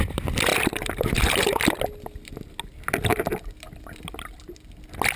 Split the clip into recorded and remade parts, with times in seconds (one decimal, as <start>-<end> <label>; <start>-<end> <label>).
0.0-0.5 recorded; 0.5-1.6 remade; 1.6-5.2 recorded